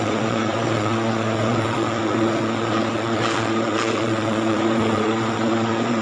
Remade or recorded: remade